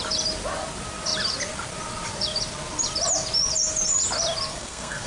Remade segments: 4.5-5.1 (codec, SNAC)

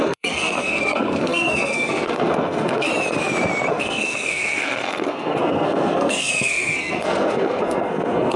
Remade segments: 0.0-2.9 (codec, SNAC); 3.7-8.4

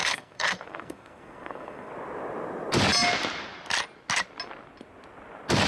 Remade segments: 0.0-1.9 (codec, SNAC)

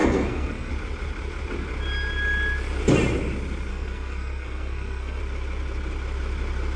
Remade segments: 0.0-0.7 (codec, SNAC); 3.7-5.2

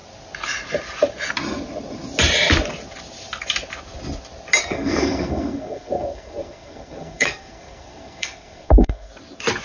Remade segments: 4.6-9.1 (codec, SNAC)

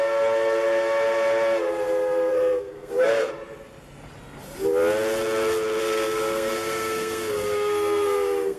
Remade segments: 2.3-3.3 (codec, SNAC); 5.8-8.6

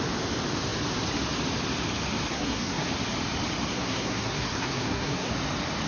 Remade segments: 2.3-2.9 (codec, SNAC); 3.7-5.3

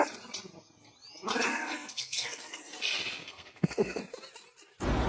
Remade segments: 1.5-2.6 (codec, SNAC); 3.2-4.0